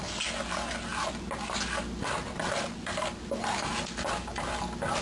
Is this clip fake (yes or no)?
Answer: no